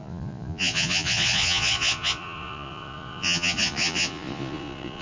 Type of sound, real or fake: fake